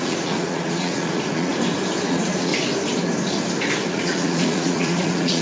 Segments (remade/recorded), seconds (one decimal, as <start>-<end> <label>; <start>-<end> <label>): 0.0-1.5 remade; 1.5-2.1 recorded; 2.1-2.5 remade; 2.5-3.9 recorded; 3.9-5.4 remade